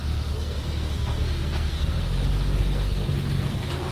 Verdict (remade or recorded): remade